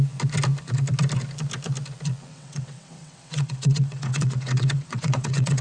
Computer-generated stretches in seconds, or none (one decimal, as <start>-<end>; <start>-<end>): 2.3-5.6